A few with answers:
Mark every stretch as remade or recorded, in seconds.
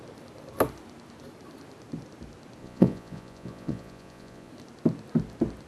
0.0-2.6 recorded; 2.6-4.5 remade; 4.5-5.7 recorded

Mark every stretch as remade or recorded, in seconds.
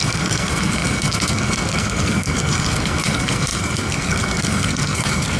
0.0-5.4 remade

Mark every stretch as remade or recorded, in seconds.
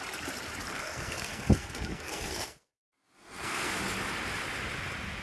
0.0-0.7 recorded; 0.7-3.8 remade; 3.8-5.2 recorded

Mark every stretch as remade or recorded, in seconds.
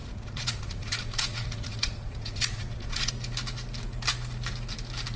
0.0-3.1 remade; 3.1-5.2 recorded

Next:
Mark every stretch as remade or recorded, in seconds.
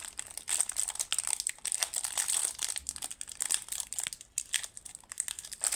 0.0-5.8 recorded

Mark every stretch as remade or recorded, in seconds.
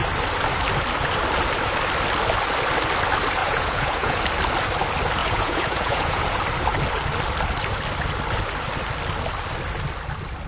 0.0-3.4 recorded; 3.4-4.2 remade; 4.2-5.2 recorded; 5.2-6.4 remade; 6.4-10.5 recorded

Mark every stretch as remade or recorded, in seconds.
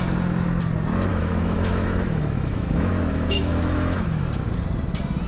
0.0-1.1 recorded; 1.1-4.3 remade; 4.3-5.3 recorded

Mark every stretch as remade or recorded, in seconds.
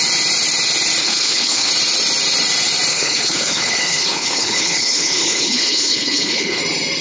0.0-1.0 recorded; 1.0-1.7 remade; 1.7-2.9 recorded; 2.9-6.6 remade; 6.6-7.0 recorded